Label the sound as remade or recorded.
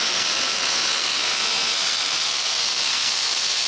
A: remade